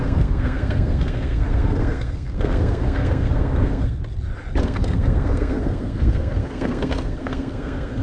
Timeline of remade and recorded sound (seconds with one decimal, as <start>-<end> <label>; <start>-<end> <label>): 0.0-4.0 remade; 4.0-4.6 recorded; 4.6-8.0 remade